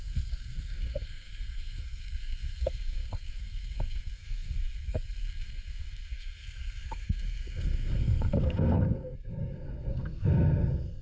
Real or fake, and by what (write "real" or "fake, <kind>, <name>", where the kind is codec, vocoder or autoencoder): fake, codec, SNAC